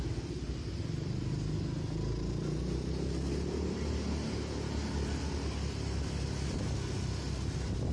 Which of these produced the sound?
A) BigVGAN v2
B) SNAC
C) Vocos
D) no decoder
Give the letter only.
D